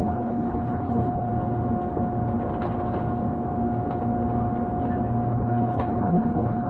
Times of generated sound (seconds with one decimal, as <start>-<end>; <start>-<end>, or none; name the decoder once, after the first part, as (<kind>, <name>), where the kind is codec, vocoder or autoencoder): 0.0-1.3 (codec, HILCodec); 5.3-6.7